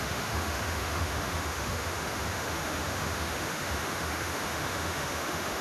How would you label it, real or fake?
fake